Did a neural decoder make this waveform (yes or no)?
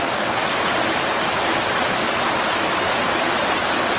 no